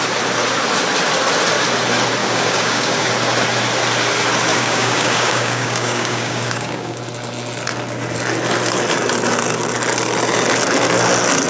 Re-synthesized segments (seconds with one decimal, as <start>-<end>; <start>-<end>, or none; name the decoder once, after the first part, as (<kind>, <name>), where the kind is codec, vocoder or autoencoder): 2.2-3.1 (codec, DAC); 4.5-7.0